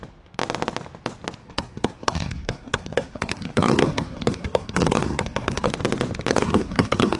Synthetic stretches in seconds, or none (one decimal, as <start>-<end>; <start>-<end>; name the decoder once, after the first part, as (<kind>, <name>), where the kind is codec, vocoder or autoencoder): 1.4-5.7 (codec, SNAC); 6.3-7.2